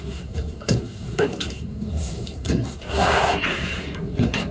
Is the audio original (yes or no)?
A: no